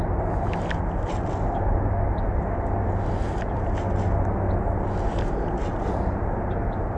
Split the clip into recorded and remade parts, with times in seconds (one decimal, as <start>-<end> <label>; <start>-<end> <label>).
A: 0.0-7.0 recorded